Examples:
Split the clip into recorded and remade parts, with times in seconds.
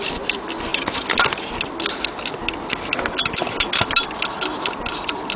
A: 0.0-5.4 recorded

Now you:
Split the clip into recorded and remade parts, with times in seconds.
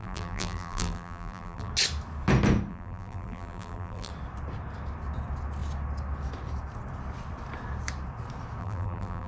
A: 0.0-1.7 remade; 1.7-2.7 recorded; 2.7-4.1 remade; 4.1-8.6 recorded; 8.6-9.3 remade